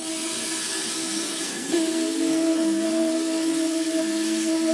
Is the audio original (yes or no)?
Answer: no